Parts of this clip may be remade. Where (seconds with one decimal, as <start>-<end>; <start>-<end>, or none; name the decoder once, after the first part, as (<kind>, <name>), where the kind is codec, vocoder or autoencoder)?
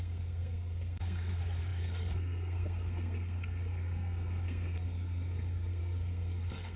0.0-6.8 (codec, SNAC)